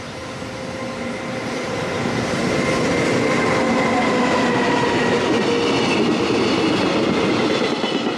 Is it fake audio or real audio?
real